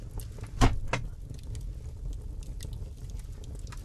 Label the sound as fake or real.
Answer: real